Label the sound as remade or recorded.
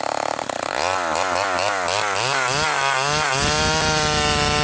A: recorded